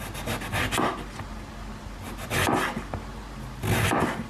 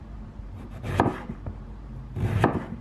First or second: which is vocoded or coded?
second